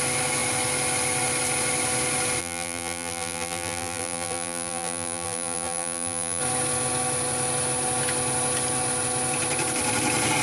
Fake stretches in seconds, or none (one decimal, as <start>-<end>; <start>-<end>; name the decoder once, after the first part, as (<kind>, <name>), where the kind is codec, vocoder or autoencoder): 2.4-6.4 (vocoder, BigVGAN v2)